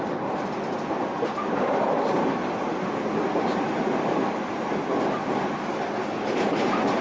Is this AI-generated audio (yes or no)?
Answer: no